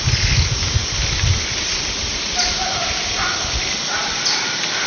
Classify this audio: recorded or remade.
recorded